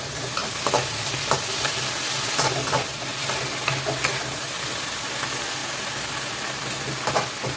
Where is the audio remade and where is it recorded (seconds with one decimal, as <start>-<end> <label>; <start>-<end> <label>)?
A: 0.0-7.6 recorded